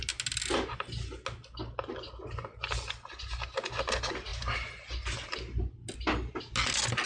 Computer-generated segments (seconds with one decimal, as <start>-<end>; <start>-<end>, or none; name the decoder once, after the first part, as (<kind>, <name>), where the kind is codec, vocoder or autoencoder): none

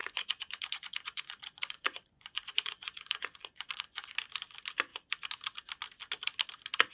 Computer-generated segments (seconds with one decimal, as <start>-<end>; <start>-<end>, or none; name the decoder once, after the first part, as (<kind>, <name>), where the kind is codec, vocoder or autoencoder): 0.0-4.1 (vocoder, Vocos)